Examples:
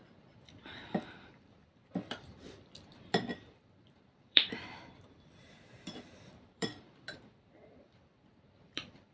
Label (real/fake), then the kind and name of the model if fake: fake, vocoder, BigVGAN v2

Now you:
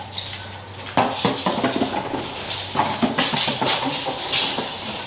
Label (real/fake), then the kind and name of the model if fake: real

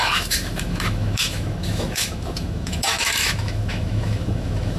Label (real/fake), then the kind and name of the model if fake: fake, autoencoder, DAC-VAE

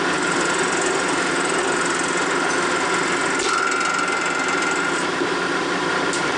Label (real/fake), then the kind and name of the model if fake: real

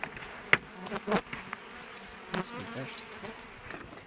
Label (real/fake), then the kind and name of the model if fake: real